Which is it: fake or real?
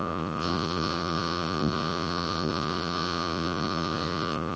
fake